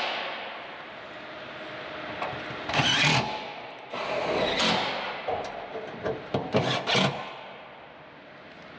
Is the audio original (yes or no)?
yes